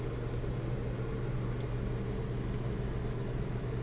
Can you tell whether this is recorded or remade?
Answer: recorded